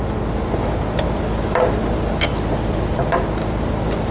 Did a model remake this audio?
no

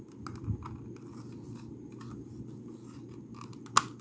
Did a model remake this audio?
no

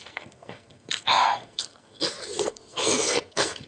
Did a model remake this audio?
yes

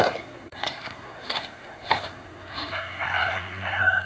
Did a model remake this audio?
yes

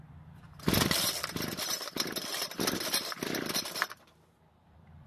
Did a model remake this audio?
yes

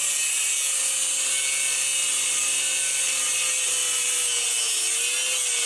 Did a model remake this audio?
no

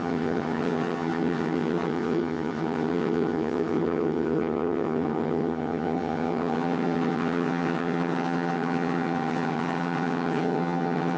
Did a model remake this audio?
yes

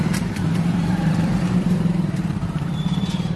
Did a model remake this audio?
yes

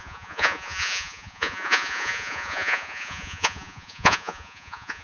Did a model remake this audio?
yes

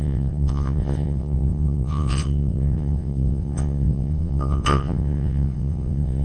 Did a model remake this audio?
yes